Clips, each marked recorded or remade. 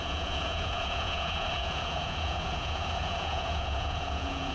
remade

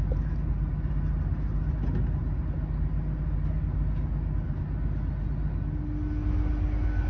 recorded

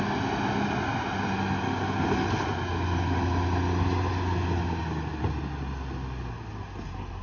recorded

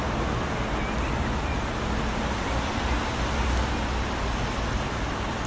recorded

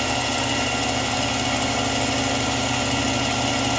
recorded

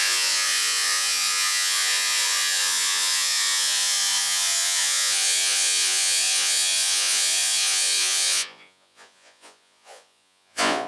remade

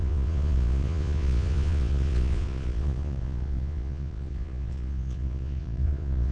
remade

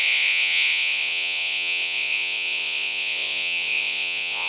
remade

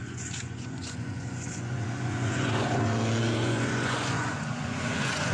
remade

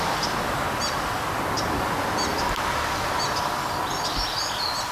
recorded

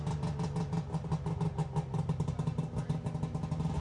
recorded